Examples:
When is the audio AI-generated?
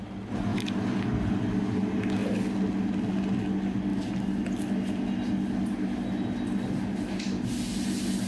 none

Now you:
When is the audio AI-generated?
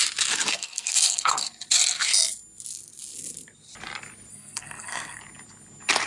0.5-1.5 (codec, SNAC); 4.3-5.2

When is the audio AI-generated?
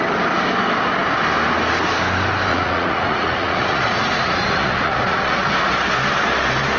2.5-5.5 (vocoder, Vocos)